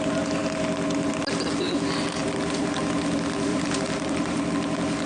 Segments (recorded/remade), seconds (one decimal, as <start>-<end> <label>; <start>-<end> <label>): 0.0-2.2 recorded; 2.2-2.8 remade; 2.8-3.5 recorded; 3.5-4.5 remade; 4.5-5.1 recorded